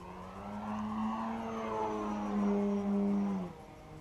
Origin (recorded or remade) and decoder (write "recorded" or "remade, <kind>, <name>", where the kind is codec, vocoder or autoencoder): recorded